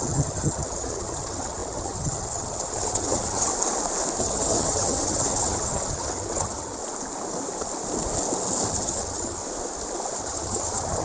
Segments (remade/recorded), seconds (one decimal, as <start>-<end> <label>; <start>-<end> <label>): 0.0-3.5 remade; 3.5-4.2 recorded; 4.2-6.8 remade; 6.8-8.7 recorded; 8.7-9.4 remade; 9.4-10.2 recorded; 10.2-11.0 remade

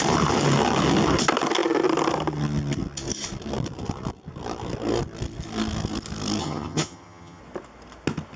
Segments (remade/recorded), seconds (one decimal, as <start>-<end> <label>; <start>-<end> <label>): 0.0-6.4 recorded; 6.4-7.4 remade; 7.4-8.4 recorded

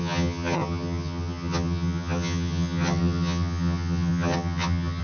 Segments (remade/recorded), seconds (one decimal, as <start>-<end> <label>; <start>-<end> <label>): 0.0-5.0 remade

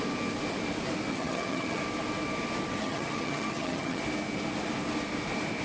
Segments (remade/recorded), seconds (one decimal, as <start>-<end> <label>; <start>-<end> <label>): 0.0-1.1 recorded; 1.1-1.8 remade; 1.8-2.8 recorded; 2.8-4.0 remade; 4.0-5.6 recorded

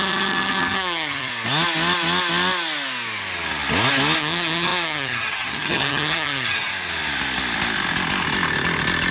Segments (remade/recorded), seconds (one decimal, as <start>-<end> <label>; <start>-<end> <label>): 0.0-1.3 remade; 1.3-4.2 recorded; 4.2-6.7 remade; 6.7-9.1 recorded

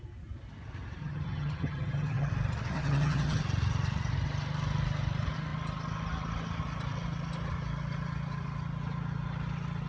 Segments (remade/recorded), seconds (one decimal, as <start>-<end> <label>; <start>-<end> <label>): 0.0-1.0 recorded; 1.0-2.3 remade; 2.3-2.7 recorded; 2.7-3.4 remade; 3.4-9.9 recorded

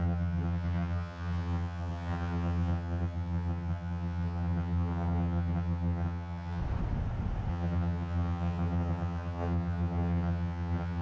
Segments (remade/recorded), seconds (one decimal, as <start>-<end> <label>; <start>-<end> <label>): 0.0-6.6 remade; 6.6-7.5 recorded; 7.5-11.0 remade

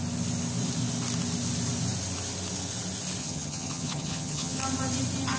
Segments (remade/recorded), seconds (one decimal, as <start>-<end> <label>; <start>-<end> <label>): 0.0-3.2 recorded; 3.2-4.6 remade; 4.6-5.4 recorded